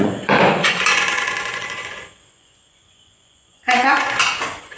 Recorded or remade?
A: remade